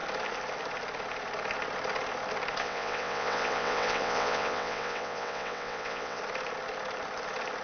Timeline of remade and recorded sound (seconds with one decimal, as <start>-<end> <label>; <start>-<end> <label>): 0.0-2.6 recorded; 2.6-6.2 remade; 6.2-7.6 recorded